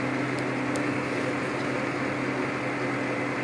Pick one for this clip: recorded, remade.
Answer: recorded